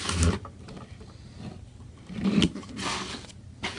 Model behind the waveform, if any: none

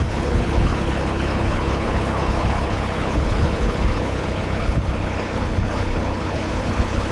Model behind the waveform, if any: codec, HILCodec